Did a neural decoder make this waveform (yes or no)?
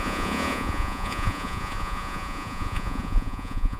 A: yes